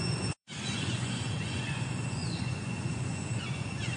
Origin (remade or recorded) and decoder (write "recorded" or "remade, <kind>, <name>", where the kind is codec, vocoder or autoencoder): remade, vocoder, Vocos